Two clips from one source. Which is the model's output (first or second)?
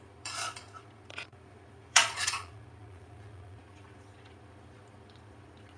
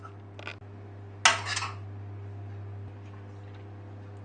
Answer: first